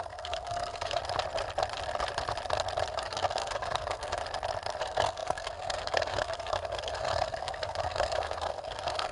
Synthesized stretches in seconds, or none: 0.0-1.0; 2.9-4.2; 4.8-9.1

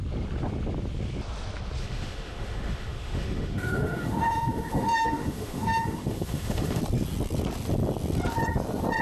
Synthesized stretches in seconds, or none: 1.8-6.8

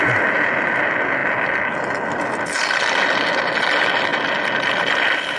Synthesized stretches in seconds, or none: none

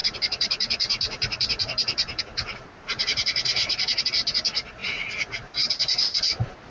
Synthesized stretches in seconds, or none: 0.0-4.0; 4.8-6.7